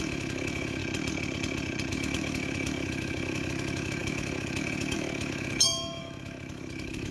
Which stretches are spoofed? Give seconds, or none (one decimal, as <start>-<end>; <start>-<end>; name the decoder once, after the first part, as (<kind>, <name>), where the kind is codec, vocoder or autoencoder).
0.0-0.8 (autoencoder, DAC-VAE); 1.9-7.1